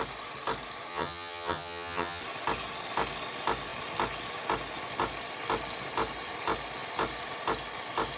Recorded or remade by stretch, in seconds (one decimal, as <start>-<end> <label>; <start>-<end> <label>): 0.0-0.9 recorded; 0.9-2.2 remade; 2.2-8.2 recorded